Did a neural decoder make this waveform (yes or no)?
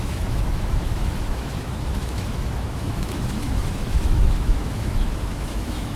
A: yes